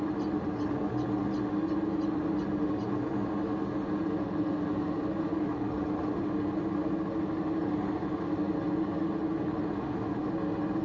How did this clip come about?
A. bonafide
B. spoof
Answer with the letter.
A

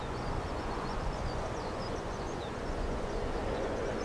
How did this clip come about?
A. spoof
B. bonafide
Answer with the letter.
A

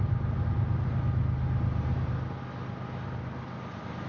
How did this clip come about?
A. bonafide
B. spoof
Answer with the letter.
A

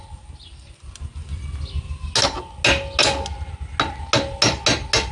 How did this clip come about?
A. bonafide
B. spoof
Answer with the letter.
A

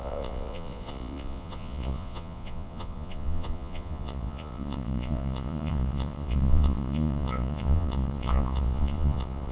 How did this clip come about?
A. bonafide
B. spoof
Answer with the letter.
B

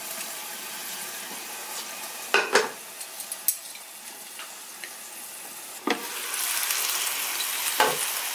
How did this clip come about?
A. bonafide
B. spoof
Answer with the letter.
A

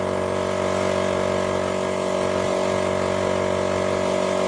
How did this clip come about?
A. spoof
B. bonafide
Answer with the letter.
B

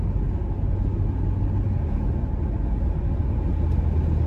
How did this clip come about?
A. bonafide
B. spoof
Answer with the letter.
A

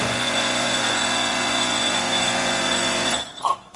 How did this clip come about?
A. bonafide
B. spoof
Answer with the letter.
B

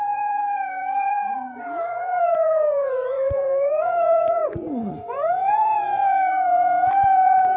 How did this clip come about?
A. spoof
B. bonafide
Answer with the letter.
A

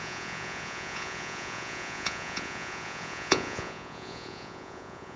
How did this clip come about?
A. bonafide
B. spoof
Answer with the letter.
B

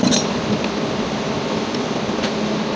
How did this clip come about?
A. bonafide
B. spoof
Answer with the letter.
A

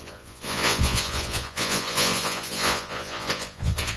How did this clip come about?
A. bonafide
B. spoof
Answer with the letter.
B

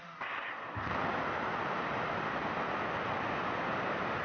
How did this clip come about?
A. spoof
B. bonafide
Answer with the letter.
B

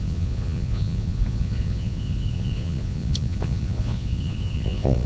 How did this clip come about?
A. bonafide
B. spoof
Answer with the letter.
B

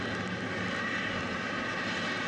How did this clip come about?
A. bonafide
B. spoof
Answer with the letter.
A